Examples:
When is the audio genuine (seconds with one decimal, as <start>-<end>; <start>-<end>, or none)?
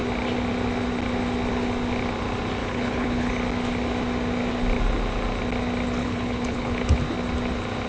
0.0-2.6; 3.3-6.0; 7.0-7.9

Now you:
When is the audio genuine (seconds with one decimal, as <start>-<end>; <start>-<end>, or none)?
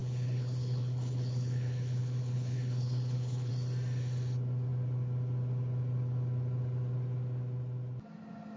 3.5-8.6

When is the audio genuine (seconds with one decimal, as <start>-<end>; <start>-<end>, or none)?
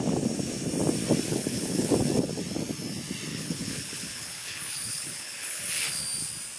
0.0-1.3; 1.9-3.3; 6.0-6.6